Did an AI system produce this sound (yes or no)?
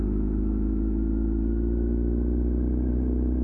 no